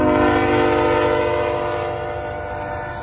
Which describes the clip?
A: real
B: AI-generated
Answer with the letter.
A